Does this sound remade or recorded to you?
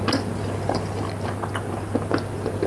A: recorded